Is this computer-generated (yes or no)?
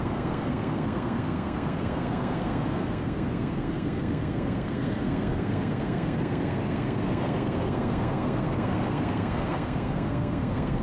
yes